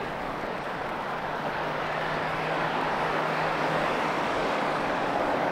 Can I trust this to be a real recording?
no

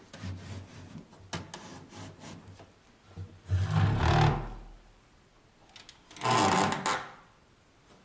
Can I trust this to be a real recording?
yes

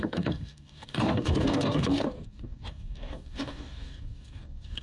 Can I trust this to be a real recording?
no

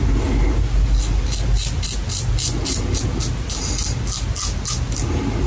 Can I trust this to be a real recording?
yes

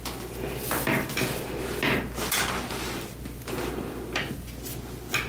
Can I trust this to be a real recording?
yes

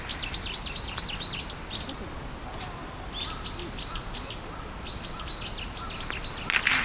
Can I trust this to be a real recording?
yes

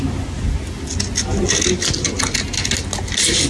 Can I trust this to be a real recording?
yes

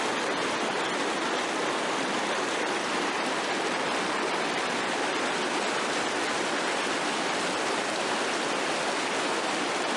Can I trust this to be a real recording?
yes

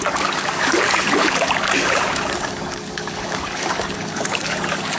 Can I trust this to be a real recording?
no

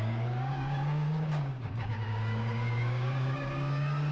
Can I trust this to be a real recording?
no